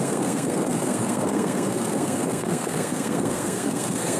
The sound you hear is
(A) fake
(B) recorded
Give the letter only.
A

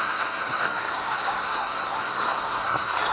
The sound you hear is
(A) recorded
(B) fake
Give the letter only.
B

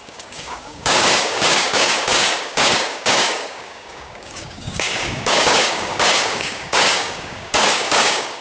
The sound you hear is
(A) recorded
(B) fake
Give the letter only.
B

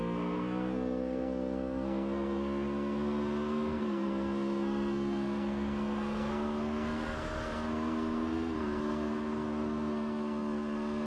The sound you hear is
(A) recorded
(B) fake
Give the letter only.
B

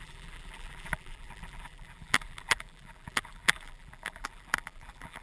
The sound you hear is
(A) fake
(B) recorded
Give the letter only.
A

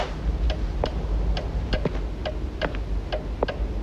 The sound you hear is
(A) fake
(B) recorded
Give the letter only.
B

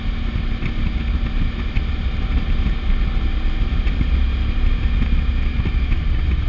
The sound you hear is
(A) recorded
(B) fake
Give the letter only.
A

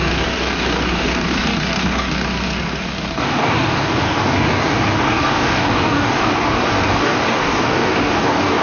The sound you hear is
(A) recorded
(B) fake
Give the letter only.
B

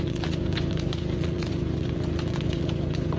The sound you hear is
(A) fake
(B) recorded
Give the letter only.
A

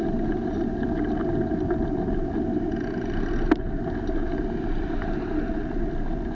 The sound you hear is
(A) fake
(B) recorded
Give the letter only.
B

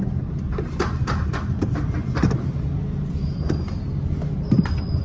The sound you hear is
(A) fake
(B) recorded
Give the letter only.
B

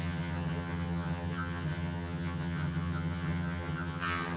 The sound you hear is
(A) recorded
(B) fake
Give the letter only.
B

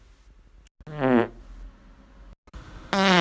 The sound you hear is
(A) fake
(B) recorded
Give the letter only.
B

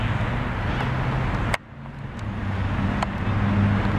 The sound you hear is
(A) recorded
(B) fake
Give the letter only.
A